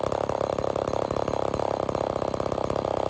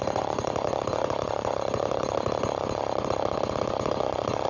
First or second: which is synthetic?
second